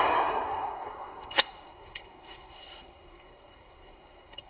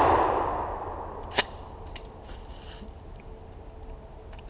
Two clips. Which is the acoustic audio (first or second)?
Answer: second